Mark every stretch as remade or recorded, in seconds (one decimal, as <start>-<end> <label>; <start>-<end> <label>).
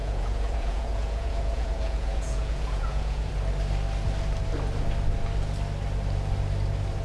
0.0-3.3 remade; 3.3-7.0 recorded